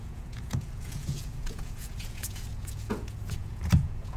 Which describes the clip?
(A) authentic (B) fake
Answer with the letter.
B